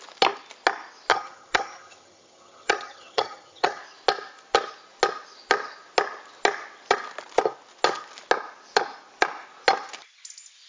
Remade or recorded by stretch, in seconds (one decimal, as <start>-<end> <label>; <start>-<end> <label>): 0.0-1.1 recorded; 1.1-3.8 remade; 3.8-10.7 recorded